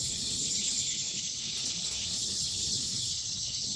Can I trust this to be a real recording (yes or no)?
no